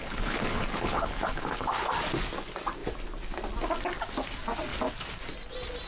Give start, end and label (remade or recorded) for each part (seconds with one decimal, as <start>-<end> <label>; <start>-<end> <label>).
0.0-1.9 remade; 1.9-5.9 recorded

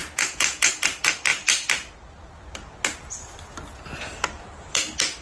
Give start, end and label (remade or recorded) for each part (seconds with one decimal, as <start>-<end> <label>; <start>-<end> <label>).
0.0-0.7 remade; 0.7-5.2 recorded

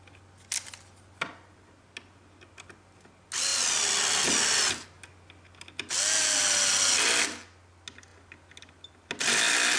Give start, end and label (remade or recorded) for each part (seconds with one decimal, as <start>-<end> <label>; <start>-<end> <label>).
0.0-9.8 recorded

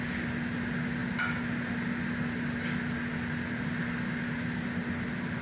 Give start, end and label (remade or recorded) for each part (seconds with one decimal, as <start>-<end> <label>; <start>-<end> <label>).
0.0-5.4 recorded